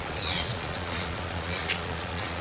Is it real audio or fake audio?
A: fake